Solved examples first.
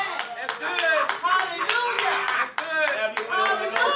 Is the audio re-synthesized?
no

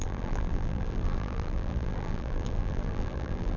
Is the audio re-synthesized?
yes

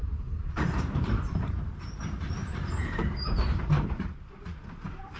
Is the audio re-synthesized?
yes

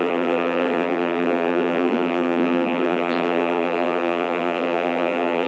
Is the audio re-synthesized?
yes